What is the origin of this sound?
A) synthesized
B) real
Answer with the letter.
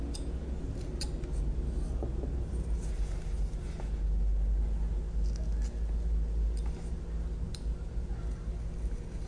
B